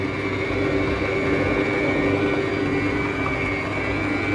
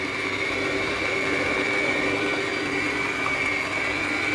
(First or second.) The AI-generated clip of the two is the second